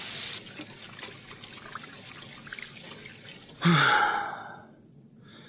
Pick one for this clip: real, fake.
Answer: real